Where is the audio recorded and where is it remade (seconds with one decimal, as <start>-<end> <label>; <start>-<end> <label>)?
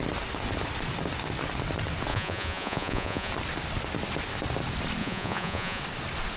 0.0-2.1 recorded; 2.1-3.3 remade; 3.3-5.0 recorded; 5.0-5.8 remade; 5.8-6.4 recorded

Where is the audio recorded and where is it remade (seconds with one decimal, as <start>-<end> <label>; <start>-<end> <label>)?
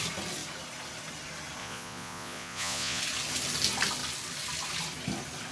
0.0-1.6 recorded; 1.6-3.0 remade; 3.0-5.5 recorded